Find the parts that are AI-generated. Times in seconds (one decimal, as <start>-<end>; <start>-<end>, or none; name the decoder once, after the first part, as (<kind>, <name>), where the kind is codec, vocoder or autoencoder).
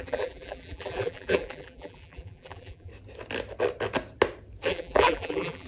0.0-2.9 (vocoder, BigVGAN v2); 4.7-5.7